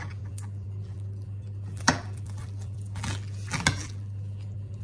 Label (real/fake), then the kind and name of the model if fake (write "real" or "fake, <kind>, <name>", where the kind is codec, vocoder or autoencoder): fake, vocoder, BigVGAN v2